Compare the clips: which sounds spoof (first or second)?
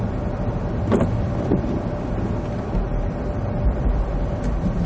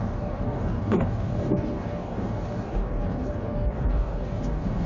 second